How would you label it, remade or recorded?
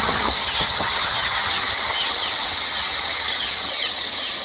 remade